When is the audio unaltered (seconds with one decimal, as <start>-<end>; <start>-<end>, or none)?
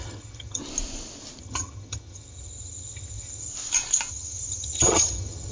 0.6-1.4; 3.5-4.1